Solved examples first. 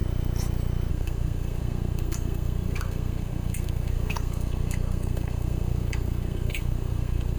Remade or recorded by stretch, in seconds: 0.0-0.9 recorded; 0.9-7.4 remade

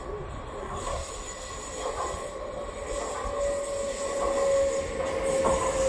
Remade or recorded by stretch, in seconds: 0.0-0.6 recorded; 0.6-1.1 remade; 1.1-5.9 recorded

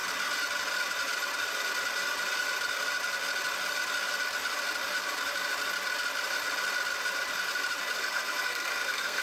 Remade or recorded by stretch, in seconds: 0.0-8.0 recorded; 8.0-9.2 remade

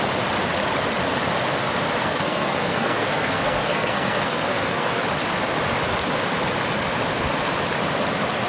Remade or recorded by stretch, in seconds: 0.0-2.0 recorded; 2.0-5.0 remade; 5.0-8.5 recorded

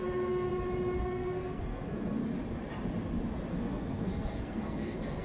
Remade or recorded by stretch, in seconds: 0.0-0.5 remade; 0.5-1.0 recorded; 1.0-2.2 remade; 2.2-3.5 recorded; 3.5-5.2 remade